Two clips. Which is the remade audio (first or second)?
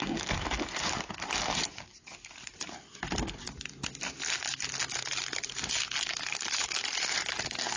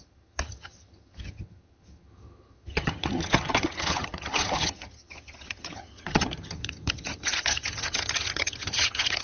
second